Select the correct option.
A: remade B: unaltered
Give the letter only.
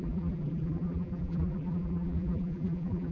A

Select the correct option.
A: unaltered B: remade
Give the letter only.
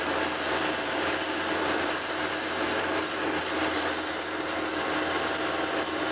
B